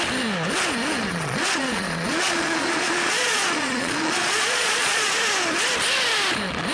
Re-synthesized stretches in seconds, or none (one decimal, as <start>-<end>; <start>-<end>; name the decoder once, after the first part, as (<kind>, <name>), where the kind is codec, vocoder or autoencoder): 1.1-5.1 (vocoder, Vocos)